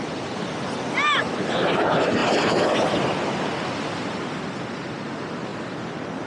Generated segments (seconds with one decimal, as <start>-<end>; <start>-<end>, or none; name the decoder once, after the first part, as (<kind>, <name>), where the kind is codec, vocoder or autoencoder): none